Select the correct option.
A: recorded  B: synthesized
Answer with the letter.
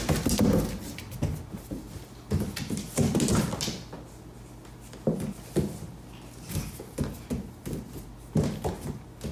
A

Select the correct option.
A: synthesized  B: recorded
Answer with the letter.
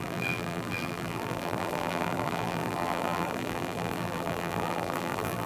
A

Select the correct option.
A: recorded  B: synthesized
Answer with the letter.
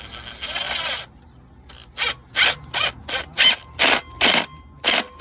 A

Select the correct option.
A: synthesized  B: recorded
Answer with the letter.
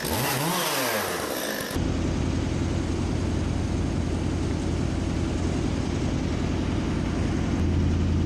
B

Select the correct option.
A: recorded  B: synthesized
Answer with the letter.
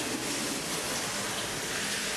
A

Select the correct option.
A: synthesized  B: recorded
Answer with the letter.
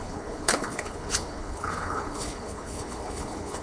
A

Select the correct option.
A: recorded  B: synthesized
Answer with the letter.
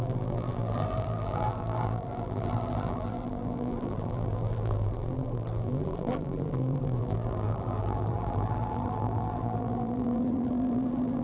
B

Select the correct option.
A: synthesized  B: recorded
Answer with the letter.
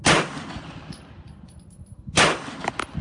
B